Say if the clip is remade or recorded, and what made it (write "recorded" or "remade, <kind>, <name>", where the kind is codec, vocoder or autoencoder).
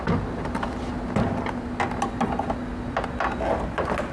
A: recorded